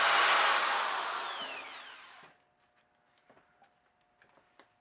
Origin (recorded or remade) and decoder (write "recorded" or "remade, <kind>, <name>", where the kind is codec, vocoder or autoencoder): recorded